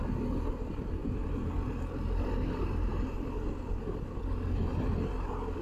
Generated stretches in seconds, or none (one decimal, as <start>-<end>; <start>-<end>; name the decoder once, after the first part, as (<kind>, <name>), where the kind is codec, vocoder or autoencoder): 1.0-1.5 (vocoder, BigVGAN v2)